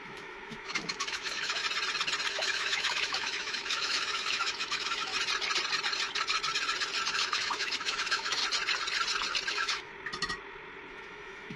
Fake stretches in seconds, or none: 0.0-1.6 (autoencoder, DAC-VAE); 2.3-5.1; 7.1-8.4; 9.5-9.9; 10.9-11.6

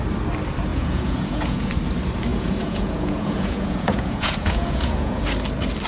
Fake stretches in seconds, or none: 0.7-1.7 (vocoder, Vocos); 2.3-5.2

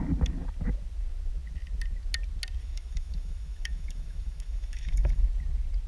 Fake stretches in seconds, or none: 2.6-5.2 (autoencoder, DAC-VAE)

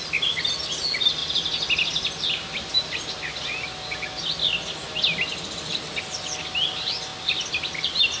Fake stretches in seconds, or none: none

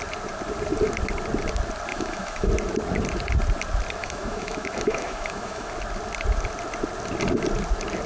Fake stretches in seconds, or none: 1.9-2.5 (autoencoder, DAC-VAE); 4.0-5.7

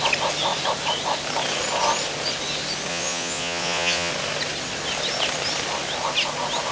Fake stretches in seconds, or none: 2.9-4.1 (vocoder, Vocos)

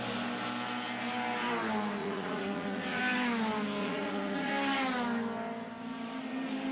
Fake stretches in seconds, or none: 2.0-3.0 (vocoder, Vocos); 3.8-4.5

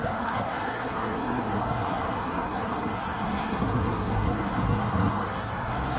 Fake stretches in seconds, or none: 0.0-6.0 (codec, SNAC)